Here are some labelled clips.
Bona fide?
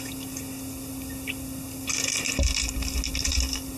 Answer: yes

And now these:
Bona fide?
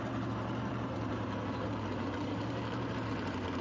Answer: no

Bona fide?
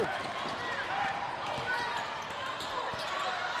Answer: yes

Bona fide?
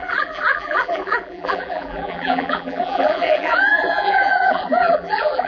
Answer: no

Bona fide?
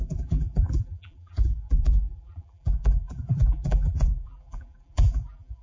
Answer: no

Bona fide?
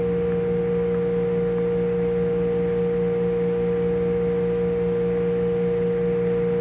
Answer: yes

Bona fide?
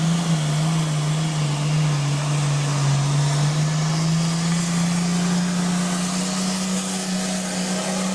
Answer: yes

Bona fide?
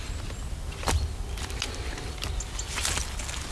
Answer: yes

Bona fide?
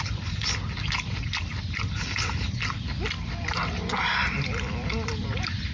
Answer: yes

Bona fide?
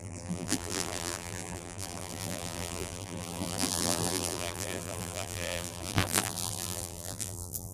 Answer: no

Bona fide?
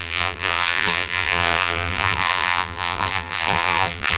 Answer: no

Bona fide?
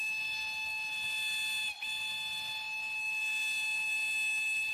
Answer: yes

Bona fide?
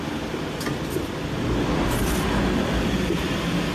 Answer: yes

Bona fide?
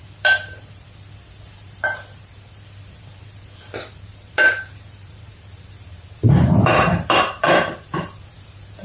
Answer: no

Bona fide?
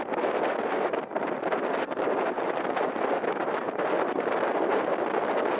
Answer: yes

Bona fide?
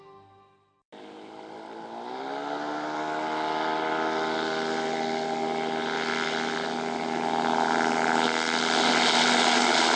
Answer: yes